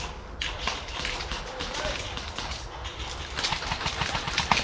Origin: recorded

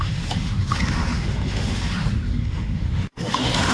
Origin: remade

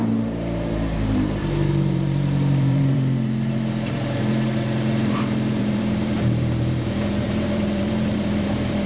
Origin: remade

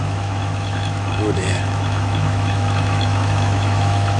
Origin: remade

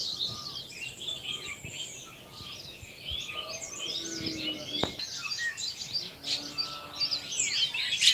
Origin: recorded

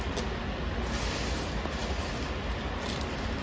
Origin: recorded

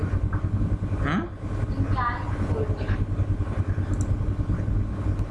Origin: recorded